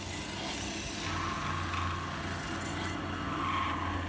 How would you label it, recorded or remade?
recorded